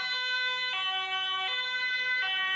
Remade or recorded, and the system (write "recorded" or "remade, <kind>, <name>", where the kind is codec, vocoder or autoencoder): recorded